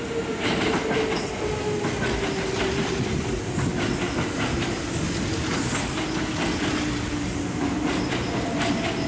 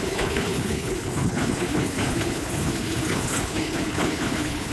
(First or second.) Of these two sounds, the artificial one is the second